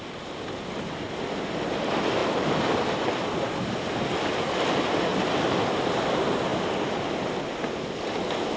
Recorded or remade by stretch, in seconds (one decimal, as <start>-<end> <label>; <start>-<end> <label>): 0.0-8.6 recorded